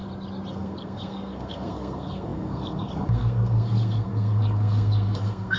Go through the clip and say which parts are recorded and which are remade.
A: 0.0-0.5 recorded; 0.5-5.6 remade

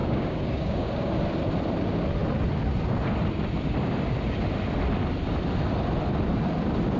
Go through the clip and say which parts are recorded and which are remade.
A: 0.0-1.1 remade; 1.1-7.0 recorded

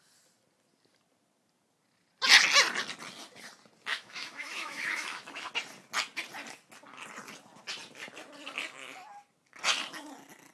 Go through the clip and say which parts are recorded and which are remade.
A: 0.0-3.9 recorded; 3.9-5.5 remade; 5.5-10.5 recorded

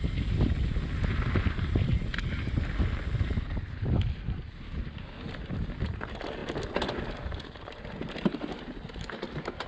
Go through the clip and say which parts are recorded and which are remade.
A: 0.0-9.7 recorded

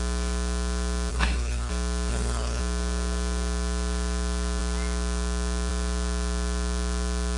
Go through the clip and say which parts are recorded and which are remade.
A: 0.0-1.1 recorded; 1.1-1.7 remade; 1.7-2.1 recorded; 2.1-2.6 remade; 2.6-7.4 recorded

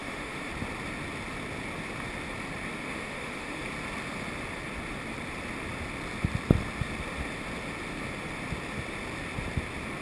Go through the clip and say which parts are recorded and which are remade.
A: 0.0-0.5 remade; 0.5-2.8 recorded; 2.8-3.6 remade; 3.6-10.0 recorded

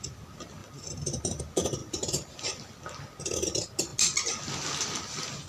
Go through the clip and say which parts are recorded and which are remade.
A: 0.0-0.6 recorded; 0.6-1.4 remade; 1.4-1.8 recorded; 1.8-2.6 remade; 2.6-5.5 recorded

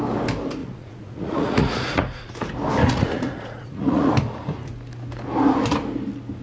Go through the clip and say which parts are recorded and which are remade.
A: 0.0-0.6 recorded; 0.6-2.3 remade; 2.3-2.8 recorded; 2.8-4.1 remade; 4.1-6.4 recorded